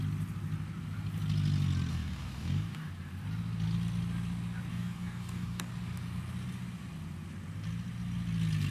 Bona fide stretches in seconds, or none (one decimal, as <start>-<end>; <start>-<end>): 0.0-1.9; 2.9-4.7; 5.7-8.7